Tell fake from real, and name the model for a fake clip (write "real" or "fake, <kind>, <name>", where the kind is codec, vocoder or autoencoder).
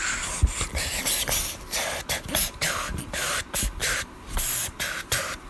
real